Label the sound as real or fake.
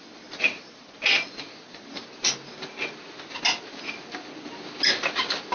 real